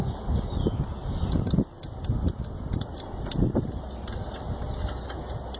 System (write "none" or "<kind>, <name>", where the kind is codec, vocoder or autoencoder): none